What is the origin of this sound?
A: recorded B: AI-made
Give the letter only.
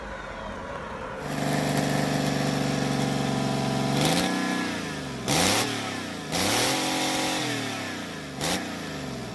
A